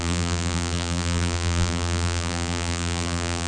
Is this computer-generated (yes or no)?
yes